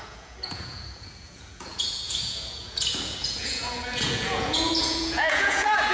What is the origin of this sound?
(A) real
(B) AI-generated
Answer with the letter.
B